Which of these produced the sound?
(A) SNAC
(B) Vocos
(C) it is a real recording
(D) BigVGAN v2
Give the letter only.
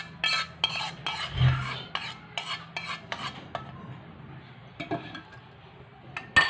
C